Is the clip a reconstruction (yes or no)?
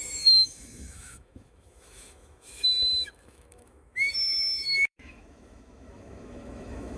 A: yes